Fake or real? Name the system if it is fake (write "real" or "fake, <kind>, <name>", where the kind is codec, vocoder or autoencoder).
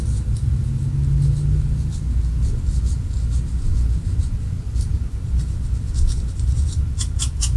real